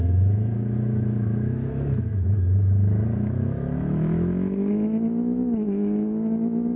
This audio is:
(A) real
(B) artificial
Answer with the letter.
B